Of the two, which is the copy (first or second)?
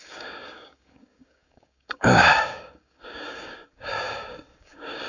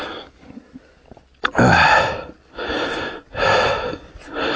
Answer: first